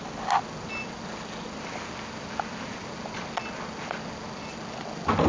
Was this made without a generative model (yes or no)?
yes